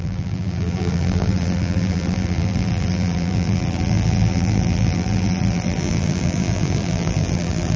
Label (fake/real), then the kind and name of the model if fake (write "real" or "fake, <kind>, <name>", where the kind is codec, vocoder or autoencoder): fake, vocoder, BigVGAN v2